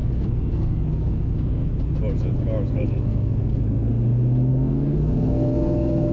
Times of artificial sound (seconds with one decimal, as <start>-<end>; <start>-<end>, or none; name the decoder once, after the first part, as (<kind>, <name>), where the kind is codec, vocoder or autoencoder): 0.0-1.7 (codec, SNAC); 2.7-3.9; 4.5-6.1

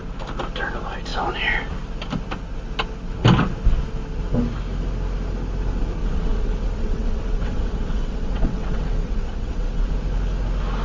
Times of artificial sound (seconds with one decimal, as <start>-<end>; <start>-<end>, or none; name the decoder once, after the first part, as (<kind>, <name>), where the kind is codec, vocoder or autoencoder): 6.0-9.9 (vocoder, WaveNeXt)